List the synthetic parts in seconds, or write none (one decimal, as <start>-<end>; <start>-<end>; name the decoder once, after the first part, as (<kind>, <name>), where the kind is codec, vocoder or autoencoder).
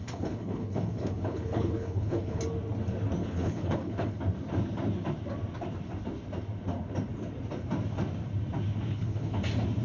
0.0-2.4 (codec, HILCodec); 3.2-4.2; 8.9-9.4